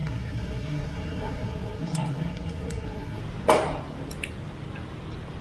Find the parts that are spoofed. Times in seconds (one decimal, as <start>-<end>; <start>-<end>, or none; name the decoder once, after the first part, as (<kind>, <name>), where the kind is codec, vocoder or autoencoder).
0.0-3.2 (codec, SNAC)